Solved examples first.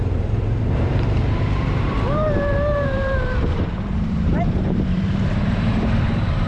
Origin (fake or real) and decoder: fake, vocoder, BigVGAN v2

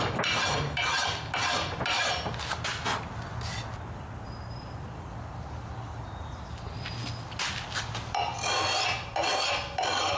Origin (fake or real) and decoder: real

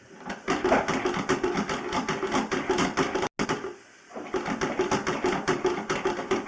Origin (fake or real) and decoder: real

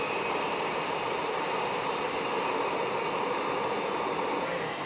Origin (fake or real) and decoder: real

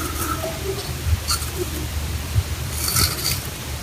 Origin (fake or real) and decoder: fake, vocoder, BigVGAN v2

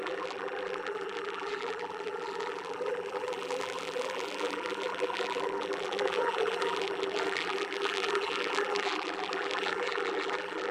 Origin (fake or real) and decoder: fake, vocoder, BigVGAN v2